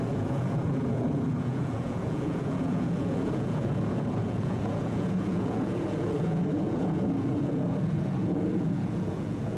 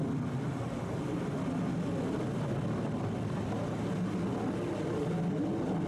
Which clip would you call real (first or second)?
second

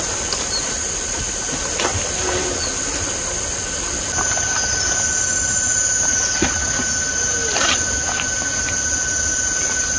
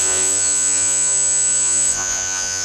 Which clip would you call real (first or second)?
first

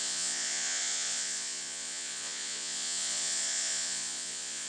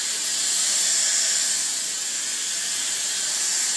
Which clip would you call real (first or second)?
second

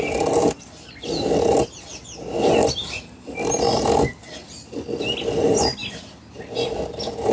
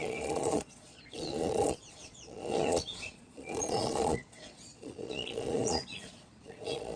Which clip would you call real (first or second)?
first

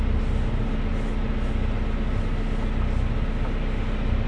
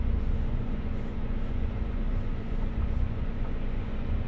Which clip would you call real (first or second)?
first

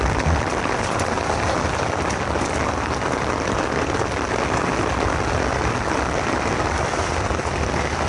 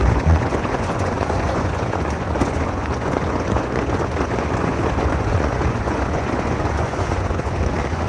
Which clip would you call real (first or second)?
first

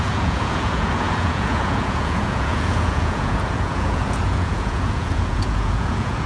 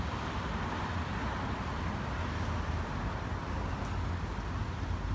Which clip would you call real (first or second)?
second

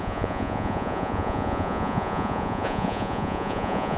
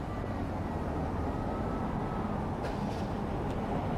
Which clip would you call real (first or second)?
second